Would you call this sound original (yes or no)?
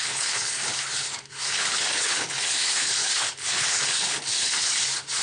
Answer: no